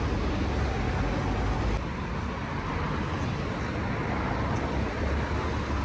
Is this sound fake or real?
real